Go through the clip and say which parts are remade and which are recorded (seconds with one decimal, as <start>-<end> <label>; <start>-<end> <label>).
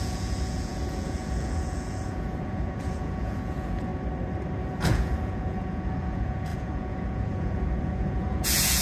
0.0-3.9 remade; 3.9-4.6 recorded; 4.6-8.8 remade